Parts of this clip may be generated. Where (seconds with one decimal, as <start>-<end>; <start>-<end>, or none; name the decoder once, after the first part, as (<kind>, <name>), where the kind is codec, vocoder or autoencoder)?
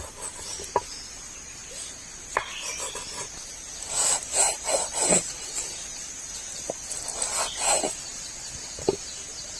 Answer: none